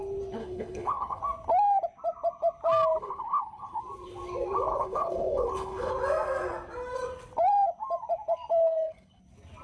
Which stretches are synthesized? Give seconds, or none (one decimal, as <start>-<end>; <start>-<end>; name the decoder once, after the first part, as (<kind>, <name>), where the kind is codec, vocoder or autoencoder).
0.4-1.2 (codec, HILCodec); 3.0-3.8; 4.7-5.9; 8.6-9.2